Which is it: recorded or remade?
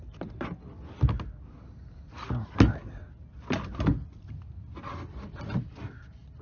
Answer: recorded